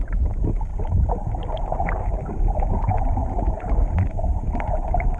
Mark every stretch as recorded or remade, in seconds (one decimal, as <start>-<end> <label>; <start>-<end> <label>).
0.0-5.2 recorded